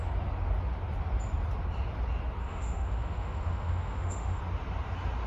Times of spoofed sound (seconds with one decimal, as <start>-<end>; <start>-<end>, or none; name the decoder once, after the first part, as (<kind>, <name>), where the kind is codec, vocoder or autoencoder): 2.4-4.4 (autoencoder, DAC-VAE)